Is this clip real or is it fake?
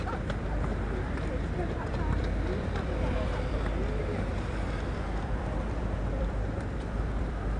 fake